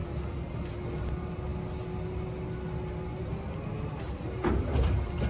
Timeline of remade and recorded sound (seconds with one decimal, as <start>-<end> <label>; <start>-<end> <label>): 0.0-5.3 recorded